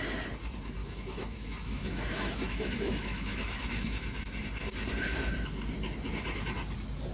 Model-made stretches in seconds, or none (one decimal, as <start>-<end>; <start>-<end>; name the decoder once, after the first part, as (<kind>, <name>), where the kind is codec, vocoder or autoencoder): 0.8-4.2 (autoencoder, DAC-VAE)